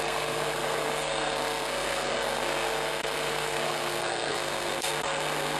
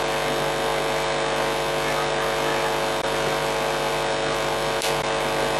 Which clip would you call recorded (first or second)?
second